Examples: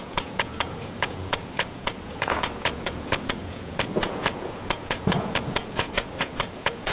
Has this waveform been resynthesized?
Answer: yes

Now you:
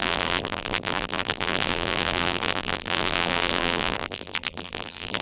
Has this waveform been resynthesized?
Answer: yes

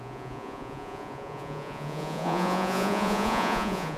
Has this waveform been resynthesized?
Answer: yes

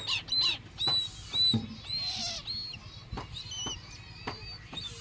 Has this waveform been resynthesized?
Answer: no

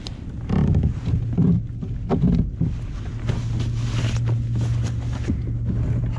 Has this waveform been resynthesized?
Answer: no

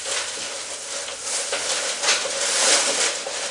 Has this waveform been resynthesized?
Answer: no